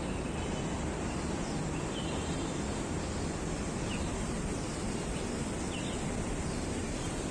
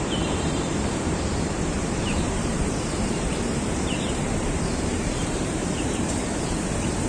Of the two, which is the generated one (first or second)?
second